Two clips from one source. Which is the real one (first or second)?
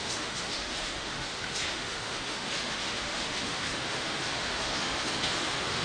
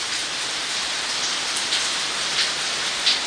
second